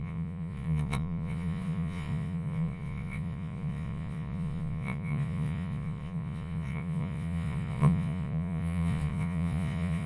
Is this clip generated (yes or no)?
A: yes